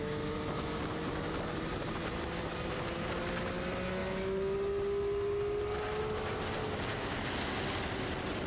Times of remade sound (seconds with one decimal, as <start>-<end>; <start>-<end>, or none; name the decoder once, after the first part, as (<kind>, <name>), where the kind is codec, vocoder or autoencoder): 6.6-7.2 (codec, DAC)